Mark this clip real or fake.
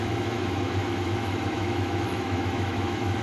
fake